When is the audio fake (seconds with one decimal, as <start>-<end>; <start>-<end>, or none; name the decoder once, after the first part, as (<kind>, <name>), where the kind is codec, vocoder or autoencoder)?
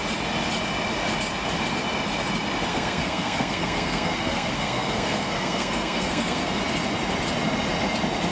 2.7-6.6 (codec, SNAC)